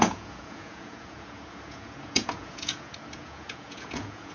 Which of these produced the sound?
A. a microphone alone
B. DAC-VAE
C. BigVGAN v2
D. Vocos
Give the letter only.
D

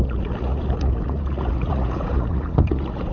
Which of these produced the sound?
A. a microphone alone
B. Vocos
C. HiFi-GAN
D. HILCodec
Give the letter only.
B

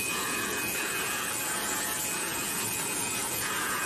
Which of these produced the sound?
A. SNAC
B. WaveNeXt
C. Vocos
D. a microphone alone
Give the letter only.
C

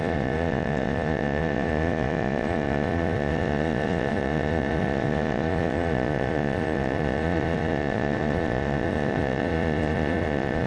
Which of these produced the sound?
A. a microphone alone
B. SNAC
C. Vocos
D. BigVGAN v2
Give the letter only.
C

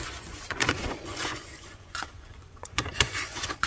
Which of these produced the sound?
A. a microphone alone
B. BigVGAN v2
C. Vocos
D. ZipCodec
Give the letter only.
C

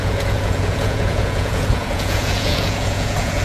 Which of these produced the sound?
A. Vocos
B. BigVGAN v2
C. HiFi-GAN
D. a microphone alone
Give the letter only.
A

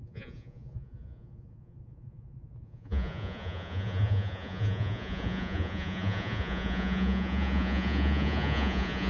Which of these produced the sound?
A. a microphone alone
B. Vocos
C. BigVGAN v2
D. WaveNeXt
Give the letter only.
B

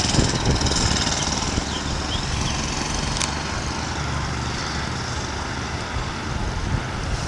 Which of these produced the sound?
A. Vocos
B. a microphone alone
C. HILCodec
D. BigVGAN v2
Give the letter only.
B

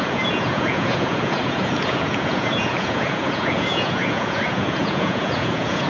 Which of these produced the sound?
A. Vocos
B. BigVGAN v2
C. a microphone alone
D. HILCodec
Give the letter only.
A